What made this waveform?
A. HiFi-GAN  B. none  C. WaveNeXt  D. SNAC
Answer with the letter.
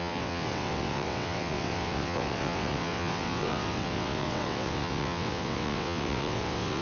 C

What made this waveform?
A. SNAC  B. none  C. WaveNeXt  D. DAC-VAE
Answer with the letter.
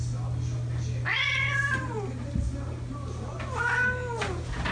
B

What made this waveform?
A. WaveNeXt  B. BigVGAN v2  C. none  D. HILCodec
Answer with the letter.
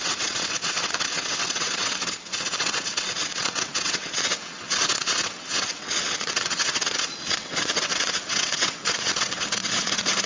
A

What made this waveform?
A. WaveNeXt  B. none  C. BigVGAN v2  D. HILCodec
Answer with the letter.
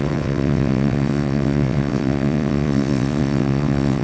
A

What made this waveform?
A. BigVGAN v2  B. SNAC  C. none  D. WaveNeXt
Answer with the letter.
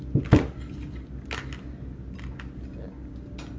C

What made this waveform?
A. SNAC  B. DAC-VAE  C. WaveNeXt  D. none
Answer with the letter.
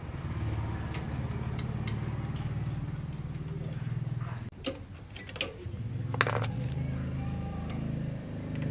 D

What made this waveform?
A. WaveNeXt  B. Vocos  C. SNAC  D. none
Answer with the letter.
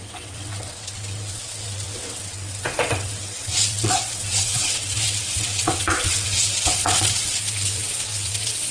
A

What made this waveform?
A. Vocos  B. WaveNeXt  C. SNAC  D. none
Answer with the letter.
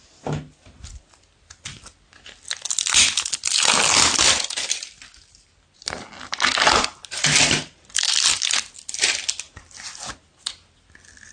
D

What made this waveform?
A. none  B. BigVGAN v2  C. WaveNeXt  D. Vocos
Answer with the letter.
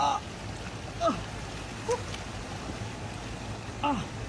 A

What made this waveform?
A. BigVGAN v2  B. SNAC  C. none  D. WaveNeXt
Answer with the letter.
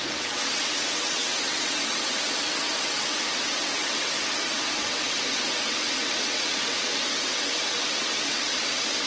D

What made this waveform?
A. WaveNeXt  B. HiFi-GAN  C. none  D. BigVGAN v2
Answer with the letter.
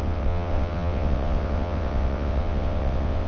A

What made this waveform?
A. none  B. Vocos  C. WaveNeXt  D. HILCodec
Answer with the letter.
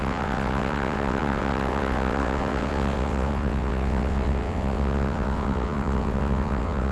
C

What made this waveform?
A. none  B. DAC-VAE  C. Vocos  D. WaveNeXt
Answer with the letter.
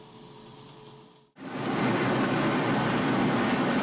A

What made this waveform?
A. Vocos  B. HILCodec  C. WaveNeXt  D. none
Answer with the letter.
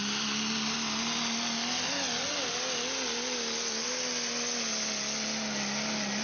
D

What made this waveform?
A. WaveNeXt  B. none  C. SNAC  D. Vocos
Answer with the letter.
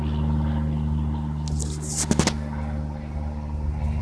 B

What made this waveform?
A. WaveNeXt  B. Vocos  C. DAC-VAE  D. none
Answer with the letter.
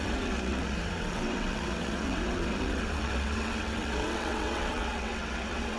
A